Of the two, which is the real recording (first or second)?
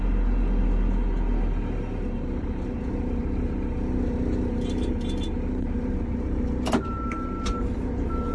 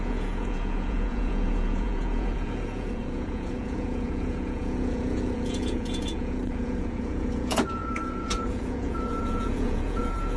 first